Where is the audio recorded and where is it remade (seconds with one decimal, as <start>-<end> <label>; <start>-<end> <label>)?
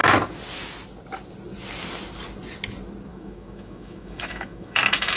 0.0-3.1 recorded; 3.1-5.2 remade